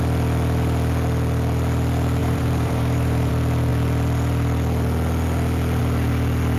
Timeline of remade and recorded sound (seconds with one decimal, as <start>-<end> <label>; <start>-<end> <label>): 0.0-2.2 recorded; 2.2-3.3 remade; 3.3-6.6 recorded